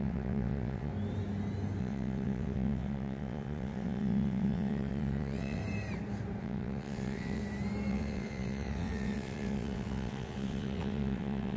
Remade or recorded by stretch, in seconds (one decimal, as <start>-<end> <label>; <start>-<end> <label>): 0.0-0.9 remade; 0.9-1.8 recorded; 1.8-5.6 remade; 5.6-6.4 recorded; 6.4-7.4 remade; 7.4-7.9 recorded; 7.9-11.6 remade